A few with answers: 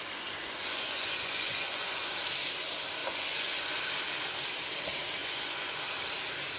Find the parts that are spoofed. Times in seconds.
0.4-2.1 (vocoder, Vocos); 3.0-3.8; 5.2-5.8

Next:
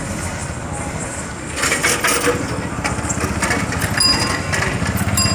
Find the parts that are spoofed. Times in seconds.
none

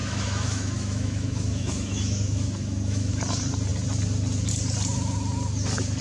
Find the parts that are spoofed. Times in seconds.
0.0-3.1 (autoencoder, DAC-VAE)

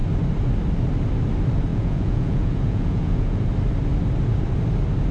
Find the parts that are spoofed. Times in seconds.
1.7-3.4 (vocoder, Vocos)